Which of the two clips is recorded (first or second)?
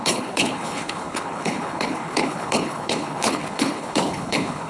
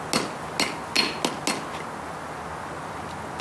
second